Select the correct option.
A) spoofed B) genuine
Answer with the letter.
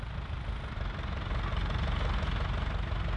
B